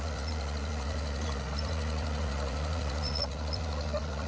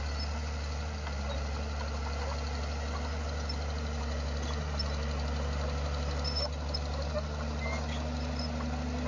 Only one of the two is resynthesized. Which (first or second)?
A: first